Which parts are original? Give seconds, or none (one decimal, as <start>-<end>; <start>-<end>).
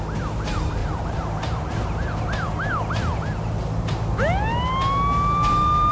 0.0-0.8; 1.6-5.9